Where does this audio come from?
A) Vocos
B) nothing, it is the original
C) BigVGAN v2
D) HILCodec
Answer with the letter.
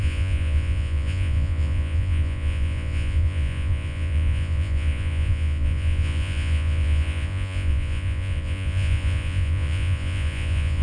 A